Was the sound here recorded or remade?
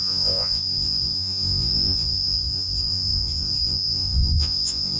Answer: remade